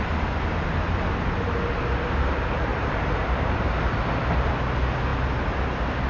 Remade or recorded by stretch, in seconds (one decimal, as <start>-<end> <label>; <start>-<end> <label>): 0.0-2.7 recorded; 2.7-4.5 remade; 4.5-6.1 recorded